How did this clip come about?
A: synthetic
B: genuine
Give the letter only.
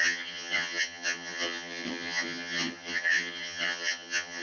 A